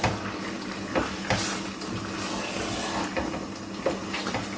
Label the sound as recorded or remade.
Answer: recorded